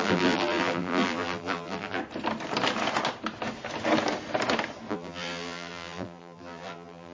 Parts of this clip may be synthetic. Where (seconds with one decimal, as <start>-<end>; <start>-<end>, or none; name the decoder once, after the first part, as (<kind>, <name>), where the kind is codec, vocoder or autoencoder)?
0.0-2.0 (vocoder, BigVGAN v2); 4.9-7.1